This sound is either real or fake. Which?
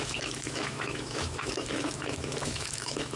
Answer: fake